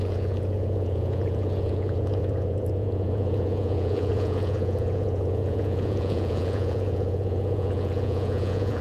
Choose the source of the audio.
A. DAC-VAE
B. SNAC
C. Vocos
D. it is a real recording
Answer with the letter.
C